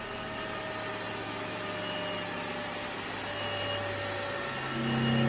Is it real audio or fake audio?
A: real